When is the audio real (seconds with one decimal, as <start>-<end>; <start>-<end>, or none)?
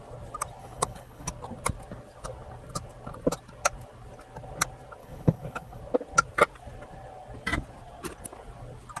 0.0-0.6; 1.3-5.0; 5.8-9.0